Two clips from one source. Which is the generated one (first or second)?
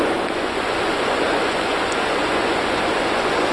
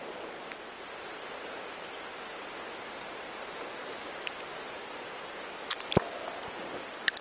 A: first